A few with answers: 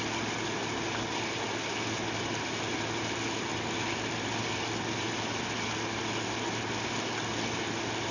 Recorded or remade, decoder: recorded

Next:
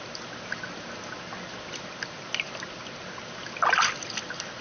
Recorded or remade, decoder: recorded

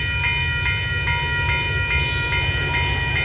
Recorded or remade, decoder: recorded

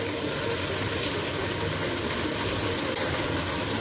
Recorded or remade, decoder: recorded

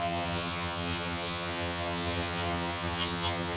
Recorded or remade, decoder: remade, vocoder, HiFi-GAN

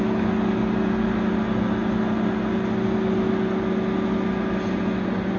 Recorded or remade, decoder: recorded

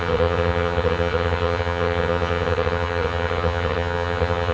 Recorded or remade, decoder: remade, vocoder, HiFi-GAN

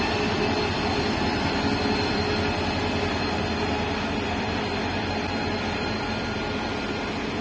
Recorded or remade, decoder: recorded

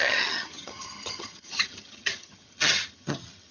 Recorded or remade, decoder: remade, vocoder, HiFi-GAN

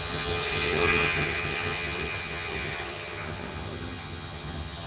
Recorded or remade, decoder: remade, vocoder, HiFi-GAN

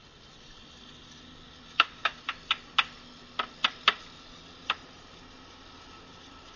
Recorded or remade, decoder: recorded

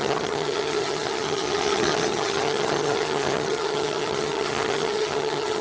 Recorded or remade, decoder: remade, vocoder, HiFi-GAN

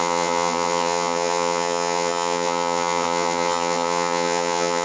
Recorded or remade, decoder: remade, vocoder, HiFi-GAN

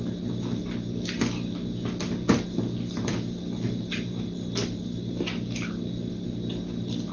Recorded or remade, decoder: recorded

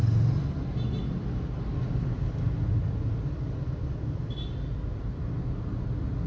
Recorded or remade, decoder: recorded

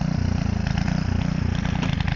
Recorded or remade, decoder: recorded